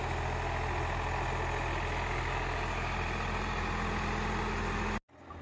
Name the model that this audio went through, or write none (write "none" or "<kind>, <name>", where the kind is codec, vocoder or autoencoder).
none